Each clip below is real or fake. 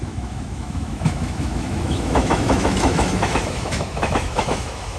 fake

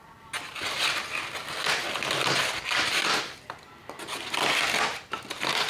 real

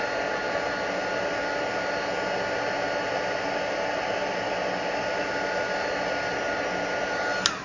real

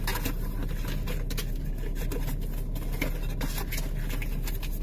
real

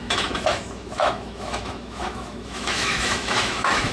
fake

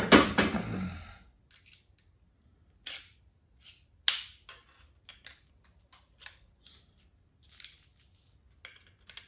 real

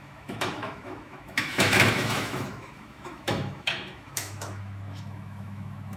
fake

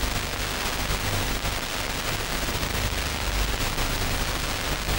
real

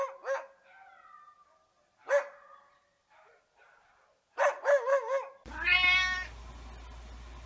real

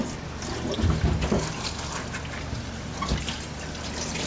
real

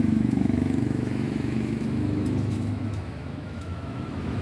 fake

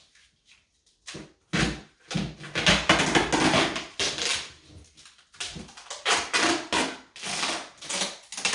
real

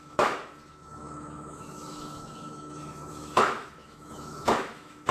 fake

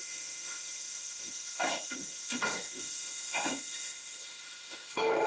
fake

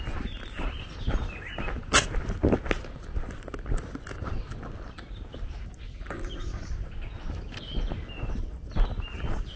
real